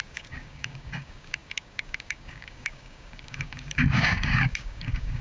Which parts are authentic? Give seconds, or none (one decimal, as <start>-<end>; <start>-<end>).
none